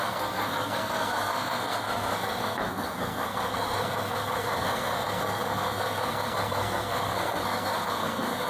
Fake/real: fake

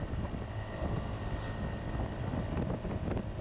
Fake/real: real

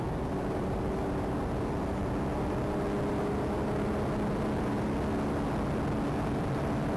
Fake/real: real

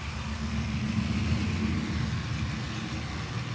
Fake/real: real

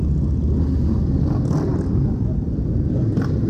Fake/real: real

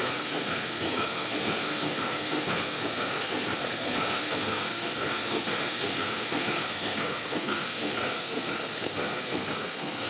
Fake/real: fake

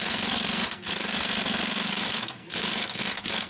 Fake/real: fake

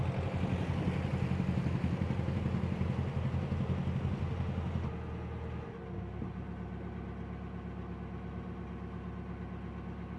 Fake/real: real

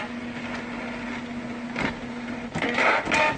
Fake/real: real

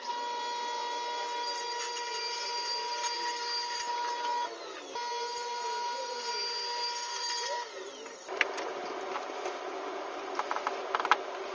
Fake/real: real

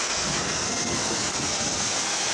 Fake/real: fake